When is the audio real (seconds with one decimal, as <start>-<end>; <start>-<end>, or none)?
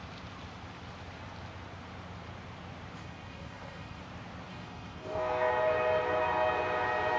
0.0-3.0; 4.0-4.5; 5.5-7.2